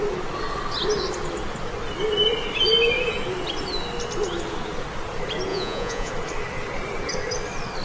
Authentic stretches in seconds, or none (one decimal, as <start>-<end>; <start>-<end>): 0.0-5.5; 6.1-7.8